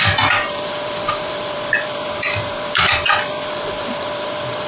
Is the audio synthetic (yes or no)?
yes